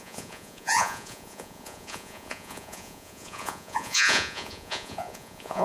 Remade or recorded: remade